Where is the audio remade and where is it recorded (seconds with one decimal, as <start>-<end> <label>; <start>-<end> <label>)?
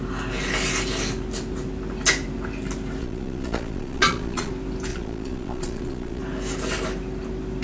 0.0-3.0 recorded; 3.0-4.5 remade; 4.5-4.9 recorded; 4.9-6.2 remade; 6.2-7.6 recorded